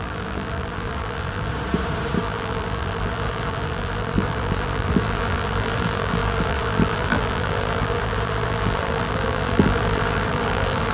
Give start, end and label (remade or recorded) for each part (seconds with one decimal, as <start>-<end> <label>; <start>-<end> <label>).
0.0-1.5 remade; 1.5-2.2 recorded; 2.2-10.9 remade